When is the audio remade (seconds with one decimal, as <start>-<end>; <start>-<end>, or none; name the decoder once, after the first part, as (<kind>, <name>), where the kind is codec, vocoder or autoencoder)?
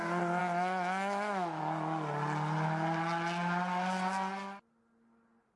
0.4-1.6 (autoencoder, DAC-VAE)